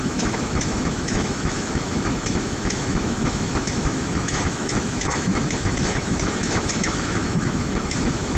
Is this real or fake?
fake